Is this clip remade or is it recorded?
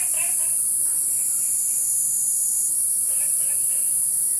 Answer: remade